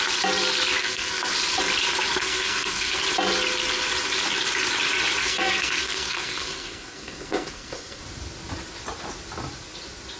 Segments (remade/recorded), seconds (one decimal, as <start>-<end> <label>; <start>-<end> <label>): 0.0-0.8 recorded; 0.8-1.3 remade; 1.3-2.2 recorded; 2.2-3.0 remade; 3.0-5.2 recorded; 5.2-8.0 remade; 8.0-10.2 recorded